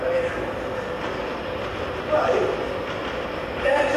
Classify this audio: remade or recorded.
remade